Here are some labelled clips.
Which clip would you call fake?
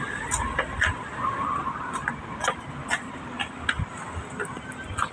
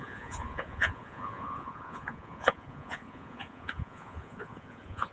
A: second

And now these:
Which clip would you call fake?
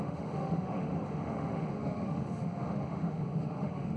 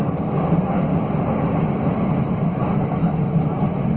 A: first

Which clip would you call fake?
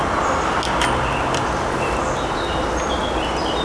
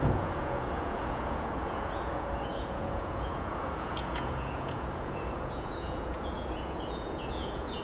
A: second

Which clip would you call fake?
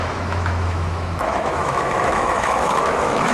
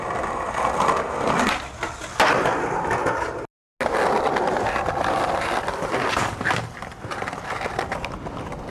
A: first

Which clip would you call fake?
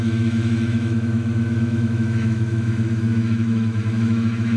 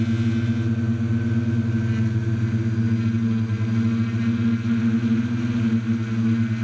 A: first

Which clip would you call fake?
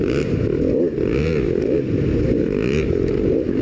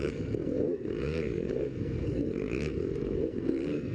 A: second